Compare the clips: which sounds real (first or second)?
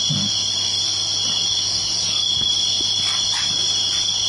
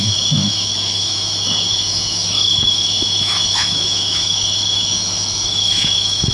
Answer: first